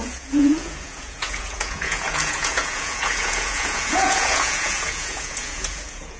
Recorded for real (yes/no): no